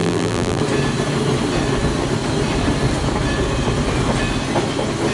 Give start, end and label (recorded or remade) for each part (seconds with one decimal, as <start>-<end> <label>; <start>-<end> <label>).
0.0-0.6 remade; 0.6-5.1 recorded

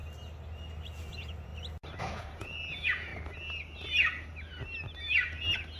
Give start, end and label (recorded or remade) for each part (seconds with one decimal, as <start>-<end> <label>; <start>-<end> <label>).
0.0-1.1 recorded; 1.1-1.5 remade; 1.5-2.0 recorded; 2.0-3.1 remade; 3.1-5.8 recorded

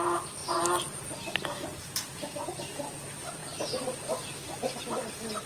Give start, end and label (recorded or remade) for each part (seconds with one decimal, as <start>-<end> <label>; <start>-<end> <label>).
0.0-5.5 recorded

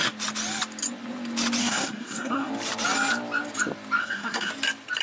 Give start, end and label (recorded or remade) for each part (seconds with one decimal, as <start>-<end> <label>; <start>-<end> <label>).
0.0-1.6 recorded; 1.6-2.5 remade; 2.5-4.0 recorded; 4.0-4.5 remade; 4.5-5.0 recorded

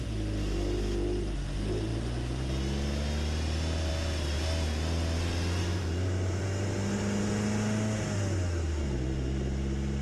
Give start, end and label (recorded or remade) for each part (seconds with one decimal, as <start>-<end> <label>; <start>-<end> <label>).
0.0-5.6 recorded; 5.6-6.4 remade; 6.4-10.0 recorded

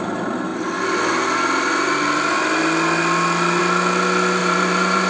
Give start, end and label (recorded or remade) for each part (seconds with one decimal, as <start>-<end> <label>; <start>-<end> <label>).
0.0-4.4 recorded; 4.4-5.1 remade

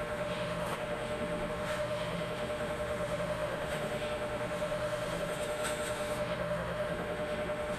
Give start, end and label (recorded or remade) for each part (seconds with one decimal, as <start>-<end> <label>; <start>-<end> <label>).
0.0-7.8 remade